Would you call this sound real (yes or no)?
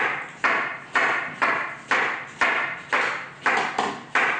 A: yes